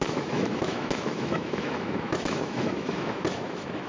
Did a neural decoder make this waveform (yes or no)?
yes